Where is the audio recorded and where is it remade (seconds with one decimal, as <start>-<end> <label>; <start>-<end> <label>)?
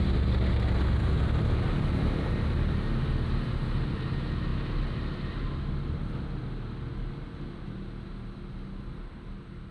0.0-9.7 recorded